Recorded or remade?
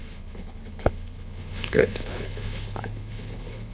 remade